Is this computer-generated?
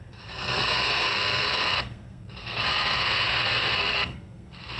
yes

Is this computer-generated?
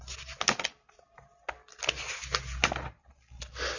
no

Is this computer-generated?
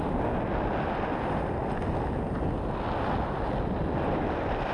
no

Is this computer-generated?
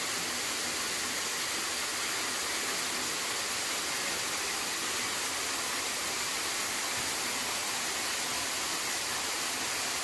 no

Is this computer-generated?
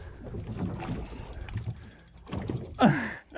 no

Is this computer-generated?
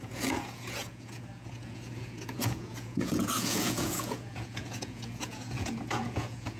yes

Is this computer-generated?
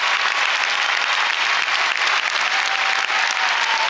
no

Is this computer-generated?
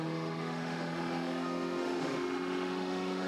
yes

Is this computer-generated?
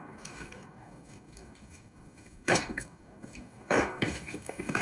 yes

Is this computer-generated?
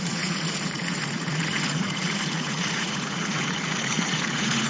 yes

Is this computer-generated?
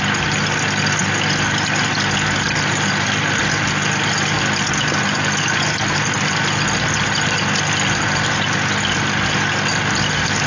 no